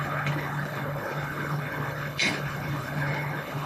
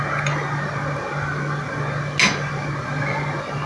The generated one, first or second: first